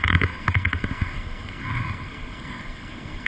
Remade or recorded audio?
remade